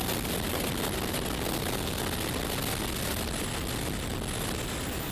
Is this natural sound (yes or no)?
yes